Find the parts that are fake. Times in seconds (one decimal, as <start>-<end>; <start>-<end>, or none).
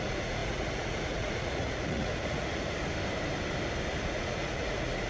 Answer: 0.0-2.5; 4.0-5.1